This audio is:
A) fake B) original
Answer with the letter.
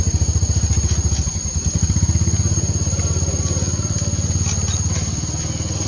B